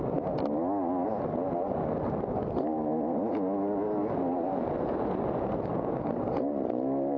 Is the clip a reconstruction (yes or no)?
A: no